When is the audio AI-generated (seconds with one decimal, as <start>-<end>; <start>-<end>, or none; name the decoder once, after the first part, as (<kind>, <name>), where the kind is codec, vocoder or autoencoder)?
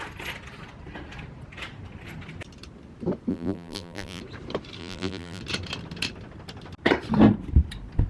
3.3-4.2 (vocoder, BigVGAN v2); 4.8-5.4